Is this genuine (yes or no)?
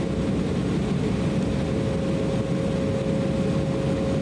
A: yes